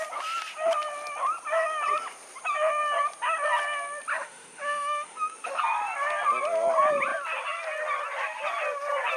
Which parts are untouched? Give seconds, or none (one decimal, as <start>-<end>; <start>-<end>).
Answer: 0.0-4.1; 5.6-9.2